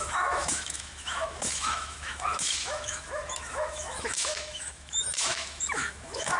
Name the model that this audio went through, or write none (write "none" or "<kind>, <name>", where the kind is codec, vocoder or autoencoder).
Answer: autoencoder, DAC-VAE